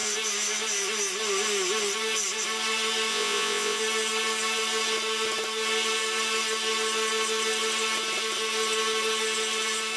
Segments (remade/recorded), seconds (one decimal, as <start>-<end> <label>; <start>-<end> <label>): 0.0-3.1 recorded; 3.1-3.8 remade; 3.8-10.0 recorded